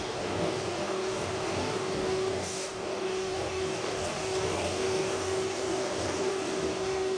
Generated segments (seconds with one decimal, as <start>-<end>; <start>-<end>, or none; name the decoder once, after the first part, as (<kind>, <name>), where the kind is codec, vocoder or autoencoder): 0.0-7.2 (codec, DAC)